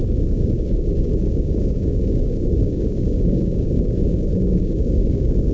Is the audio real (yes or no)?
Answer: no